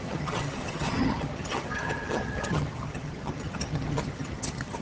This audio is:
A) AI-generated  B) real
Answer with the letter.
A